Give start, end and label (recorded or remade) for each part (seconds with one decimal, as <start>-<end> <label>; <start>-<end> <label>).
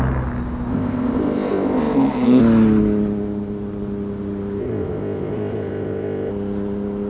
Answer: 0.0-0.7 recorded; 0.7-2.4 remade; 2.4-4.6 recorded; 4.6-6.3 remade; 6.3-7.1 recorded